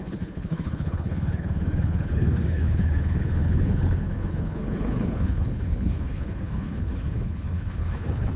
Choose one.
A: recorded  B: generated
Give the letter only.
B